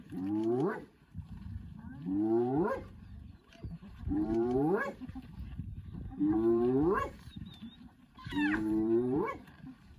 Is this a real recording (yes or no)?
no